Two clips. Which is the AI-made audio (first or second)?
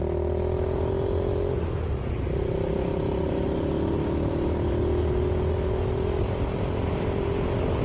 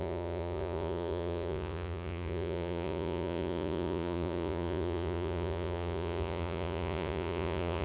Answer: second